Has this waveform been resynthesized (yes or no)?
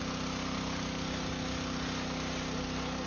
no